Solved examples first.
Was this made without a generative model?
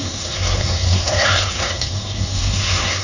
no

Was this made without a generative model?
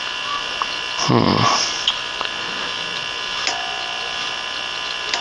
yes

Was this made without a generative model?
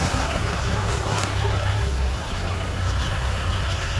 no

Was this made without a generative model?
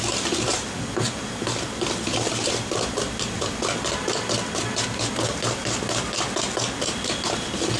yes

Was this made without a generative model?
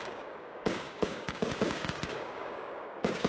no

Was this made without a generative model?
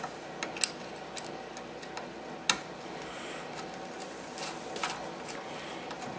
yes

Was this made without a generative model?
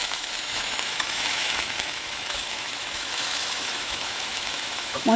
no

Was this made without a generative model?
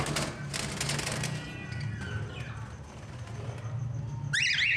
yes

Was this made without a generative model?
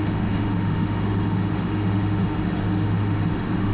no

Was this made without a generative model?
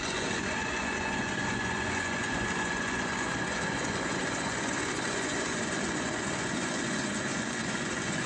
no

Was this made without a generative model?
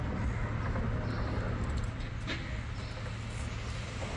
yes